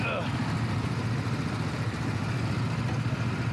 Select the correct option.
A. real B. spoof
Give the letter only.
A